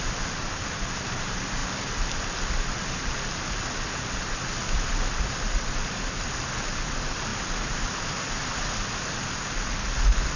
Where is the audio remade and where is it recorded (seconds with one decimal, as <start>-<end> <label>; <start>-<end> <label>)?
0.0-10.4 recorded